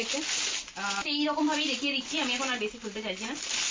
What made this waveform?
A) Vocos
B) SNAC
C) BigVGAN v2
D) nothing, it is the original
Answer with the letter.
D